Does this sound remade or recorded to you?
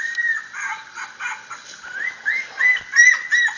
recorded